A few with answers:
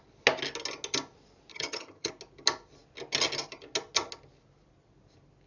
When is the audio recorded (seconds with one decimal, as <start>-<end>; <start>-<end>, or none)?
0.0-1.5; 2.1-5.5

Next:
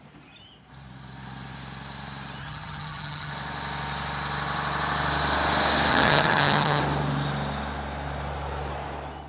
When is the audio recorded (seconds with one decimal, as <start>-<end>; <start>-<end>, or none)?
0.0-2.4; 3.3-5.9; 6.8-9.3

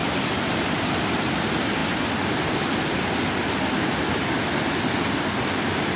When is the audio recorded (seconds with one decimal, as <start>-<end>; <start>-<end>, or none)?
0.0-6.0

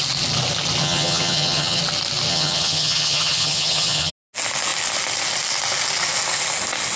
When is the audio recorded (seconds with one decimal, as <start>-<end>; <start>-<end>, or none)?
0.0-0.8; 1.8-2.3; 4.1-7.0

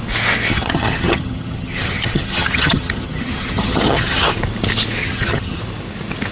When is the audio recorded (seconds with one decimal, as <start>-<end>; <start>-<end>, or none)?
0.0-0.5; 4.3-5.0; 5.6-6.3

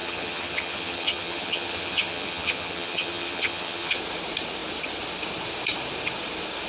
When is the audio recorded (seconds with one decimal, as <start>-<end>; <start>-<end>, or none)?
4.0-6.7

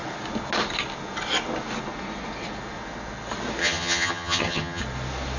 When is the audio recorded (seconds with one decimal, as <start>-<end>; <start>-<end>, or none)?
0.0-3.6; 4.8-5.4